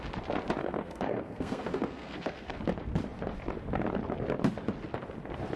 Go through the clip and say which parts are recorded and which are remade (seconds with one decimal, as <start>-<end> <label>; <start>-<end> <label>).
0.0-0.6 recorded; 0.6-2.6 remade; 2.6-5.6 recorded